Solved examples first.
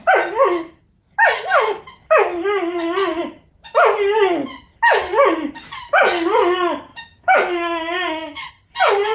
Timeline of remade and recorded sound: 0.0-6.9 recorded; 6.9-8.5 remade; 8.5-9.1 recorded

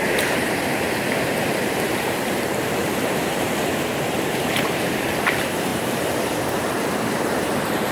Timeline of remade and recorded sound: 0.0-7.9 remade

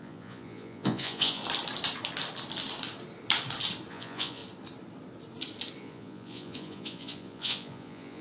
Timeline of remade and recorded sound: 0.0-1.4 remade; 1.4-3.9 recorded; 3.9-4.4 remade; 4.4-5.8 recorded; 5.8-8.2 remade

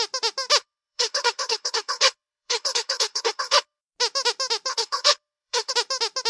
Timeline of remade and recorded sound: 0.0-0.6 recorded; 0.6-3.8 remade; 3.8-4.7 recorded; 4.7-5.7 remade; 5.7-6.3 recorded